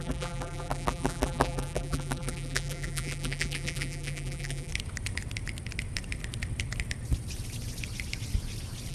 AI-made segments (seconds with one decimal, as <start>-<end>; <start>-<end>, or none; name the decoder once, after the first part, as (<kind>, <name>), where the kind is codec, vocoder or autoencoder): 0.0-4.7 (vocoder, BigVGAN v2)

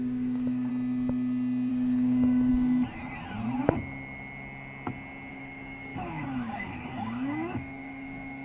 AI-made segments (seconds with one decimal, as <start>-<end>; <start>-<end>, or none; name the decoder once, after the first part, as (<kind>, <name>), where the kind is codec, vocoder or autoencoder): 0.0-0.7 (codec, DAC); 1.7-2.5; 5.3-8.4

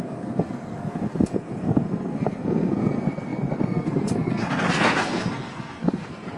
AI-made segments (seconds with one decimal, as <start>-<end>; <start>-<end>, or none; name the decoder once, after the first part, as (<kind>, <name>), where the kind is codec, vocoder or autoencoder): 0.0-6.4 (codec, SNAC)

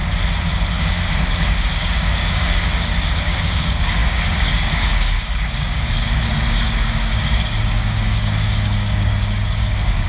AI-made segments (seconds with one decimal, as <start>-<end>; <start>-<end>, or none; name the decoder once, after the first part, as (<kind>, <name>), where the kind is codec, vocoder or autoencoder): 0.7-10.1 (codec, DAC)

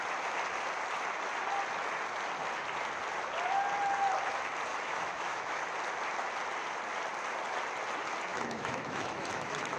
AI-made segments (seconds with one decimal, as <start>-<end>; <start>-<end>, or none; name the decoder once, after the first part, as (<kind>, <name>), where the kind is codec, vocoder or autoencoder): 4.7-5.6 (autoencoder, DAC-VAE); 8.3-9.8